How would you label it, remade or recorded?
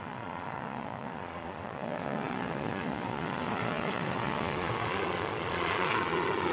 remade